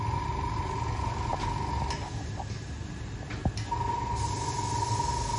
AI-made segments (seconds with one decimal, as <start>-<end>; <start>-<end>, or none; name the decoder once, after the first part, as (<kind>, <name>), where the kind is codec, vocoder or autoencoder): none

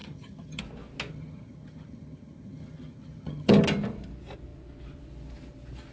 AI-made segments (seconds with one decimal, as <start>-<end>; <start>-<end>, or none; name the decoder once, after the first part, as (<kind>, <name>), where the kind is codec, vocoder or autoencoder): 0.0-0.6 (vocoder, HiFi-GAN); 1.1-3.5

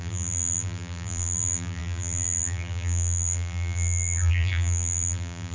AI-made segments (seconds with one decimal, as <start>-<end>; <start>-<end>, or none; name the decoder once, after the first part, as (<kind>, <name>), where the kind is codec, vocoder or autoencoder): 0.0-5.5 (vocoder, BigVGAN v2)

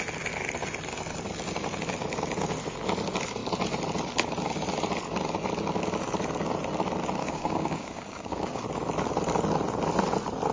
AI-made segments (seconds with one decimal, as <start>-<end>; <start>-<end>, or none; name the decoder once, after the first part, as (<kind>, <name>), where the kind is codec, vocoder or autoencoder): 7.2-8.6 (codec, DAC)

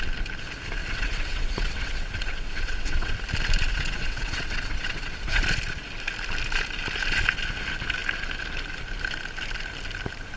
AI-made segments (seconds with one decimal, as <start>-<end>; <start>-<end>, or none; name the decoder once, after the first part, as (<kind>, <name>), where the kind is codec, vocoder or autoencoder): 0.8-3.1 (vocoder, WaveNeXt); 3.7-5.4

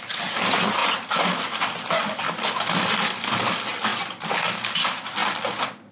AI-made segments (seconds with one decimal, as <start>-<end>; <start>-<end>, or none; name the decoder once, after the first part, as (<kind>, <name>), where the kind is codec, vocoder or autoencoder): 0.0-0.8 (vocoder, BigVGAN v2); 1.8-3.9; 4.8-5.2

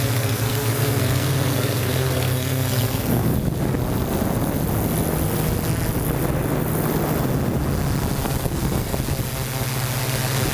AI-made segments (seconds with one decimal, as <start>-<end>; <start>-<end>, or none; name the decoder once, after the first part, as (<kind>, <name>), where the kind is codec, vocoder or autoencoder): 0.0-3.3 (codec, SNAC); 8.2-8.9

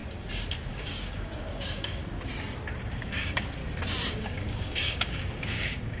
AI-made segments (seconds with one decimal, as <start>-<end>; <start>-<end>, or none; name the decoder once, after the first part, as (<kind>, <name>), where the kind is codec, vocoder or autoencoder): 0.7-2.0 (codec, DAC); 2.9-3.6; 4.1-6.0